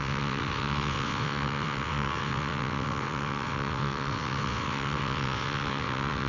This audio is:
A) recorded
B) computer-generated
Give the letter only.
B